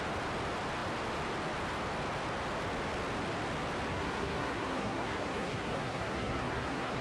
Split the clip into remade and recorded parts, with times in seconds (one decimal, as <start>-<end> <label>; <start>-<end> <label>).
0.0-3.9 recorded; 3.9-7.0 remade